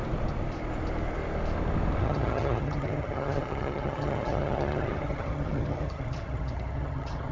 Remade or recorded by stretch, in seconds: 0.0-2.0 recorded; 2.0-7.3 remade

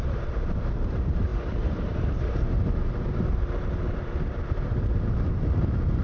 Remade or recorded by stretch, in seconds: 0.0-6.0 remade

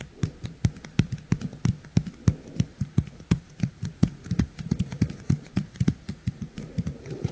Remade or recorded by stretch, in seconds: 0.0-2.7 recorded; 2.7-7.3 remade

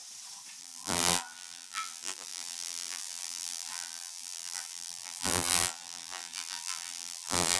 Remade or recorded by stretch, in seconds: 0.0-0.6 recorded; 0.6-7.6 remade

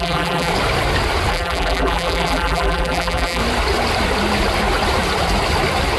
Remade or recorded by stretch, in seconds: 0.0-0.5 remade; 0.5-1.3 recorded; 1.3-3.4 remade; 3.4-6.0 recorded